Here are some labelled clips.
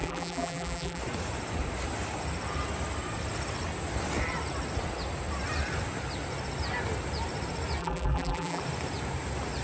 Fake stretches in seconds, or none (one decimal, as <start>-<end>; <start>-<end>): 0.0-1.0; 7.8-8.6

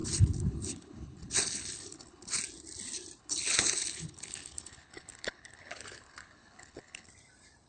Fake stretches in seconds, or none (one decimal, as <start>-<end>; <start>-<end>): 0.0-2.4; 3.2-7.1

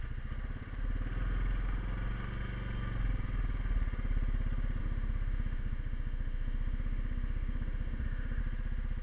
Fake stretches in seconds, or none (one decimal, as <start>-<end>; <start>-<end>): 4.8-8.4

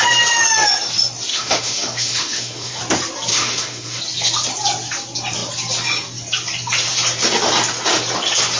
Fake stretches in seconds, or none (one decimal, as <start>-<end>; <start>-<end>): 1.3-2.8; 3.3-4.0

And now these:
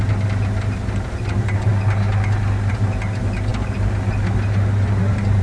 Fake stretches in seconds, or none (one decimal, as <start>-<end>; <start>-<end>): none

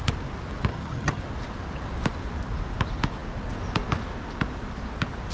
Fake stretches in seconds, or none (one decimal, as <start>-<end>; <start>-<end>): 0.7-1.2

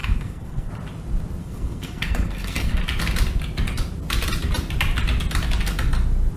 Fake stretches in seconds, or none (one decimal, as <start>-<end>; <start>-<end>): 0.0-0.7; 1.4-2.8